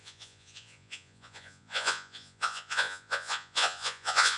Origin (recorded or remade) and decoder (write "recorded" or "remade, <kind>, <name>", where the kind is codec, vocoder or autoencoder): remade, vocoder, Vocos